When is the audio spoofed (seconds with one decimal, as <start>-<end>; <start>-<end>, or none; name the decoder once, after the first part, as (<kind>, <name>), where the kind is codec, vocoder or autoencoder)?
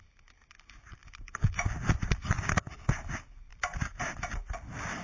3.5-4.0 (vocoder, BigVGAN v2)